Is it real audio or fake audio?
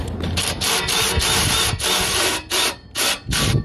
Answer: fake